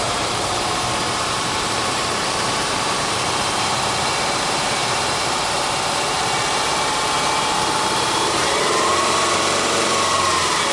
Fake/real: fake